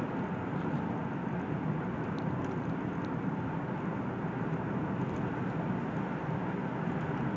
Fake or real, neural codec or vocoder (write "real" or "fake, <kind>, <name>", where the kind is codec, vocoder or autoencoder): real